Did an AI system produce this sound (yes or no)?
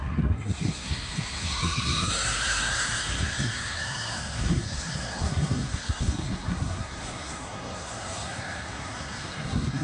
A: yes